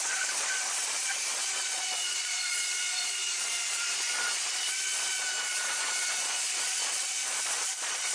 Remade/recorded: remade